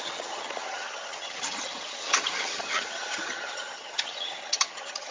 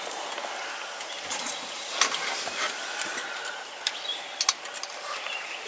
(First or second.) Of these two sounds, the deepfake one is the first